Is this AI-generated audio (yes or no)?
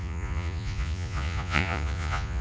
yes